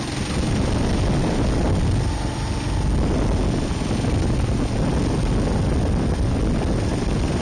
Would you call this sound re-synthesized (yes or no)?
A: no